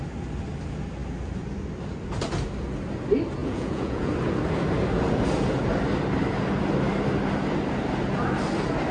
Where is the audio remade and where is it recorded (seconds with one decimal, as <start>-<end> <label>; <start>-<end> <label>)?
0.0-3.4 recorded; 3.4-4.1 remade; 4.1-8.9 recorded